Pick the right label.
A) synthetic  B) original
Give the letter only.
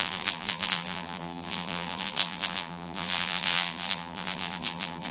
A